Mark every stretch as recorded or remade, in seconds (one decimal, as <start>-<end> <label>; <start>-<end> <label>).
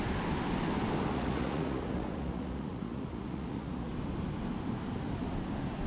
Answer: 0.0-1.1 recorded; 1.1-3.9 remade; 3.9-5.9 recorded